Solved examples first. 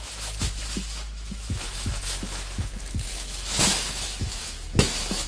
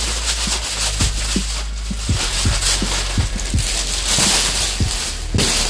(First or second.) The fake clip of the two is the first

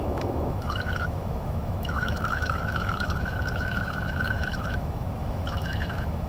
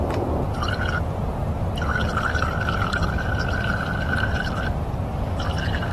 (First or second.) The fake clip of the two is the first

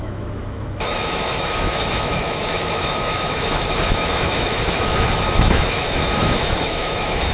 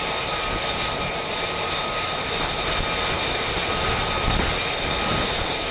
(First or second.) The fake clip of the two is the first